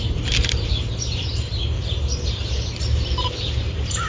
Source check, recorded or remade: remade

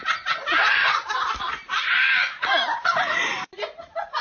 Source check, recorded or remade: remade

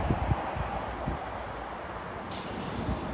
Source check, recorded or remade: recorded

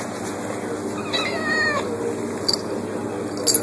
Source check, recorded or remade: recorded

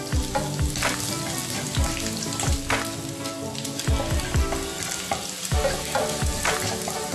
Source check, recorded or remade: recorded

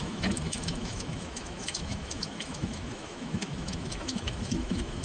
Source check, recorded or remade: remade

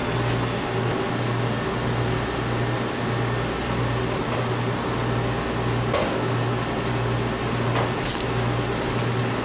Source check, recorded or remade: recorded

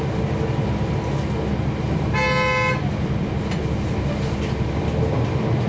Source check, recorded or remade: recorded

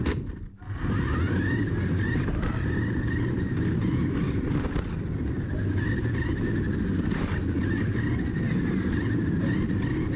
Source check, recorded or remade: recorded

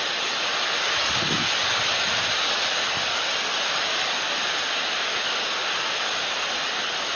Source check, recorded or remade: recorded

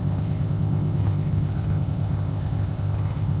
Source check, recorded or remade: remade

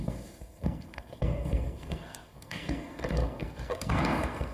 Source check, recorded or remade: remade